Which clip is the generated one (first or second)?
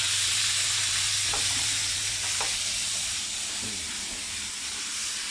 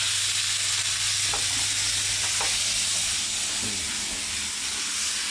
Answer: first